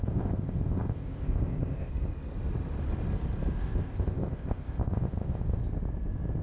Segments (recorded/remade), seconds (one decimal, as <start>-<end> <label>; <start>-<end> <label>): 0.0-1.9 remade; 1.9-3.6 recorded; 3.6-5.6 remade; 5.6-6.4 recorded